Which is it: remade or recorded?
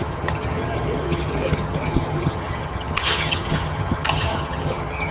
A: remade